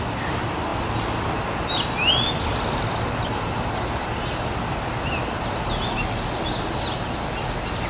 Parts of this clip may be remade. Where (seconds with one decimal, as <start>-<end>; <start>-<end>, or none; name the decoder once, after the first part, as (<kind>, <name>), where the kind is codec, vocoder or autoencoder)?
none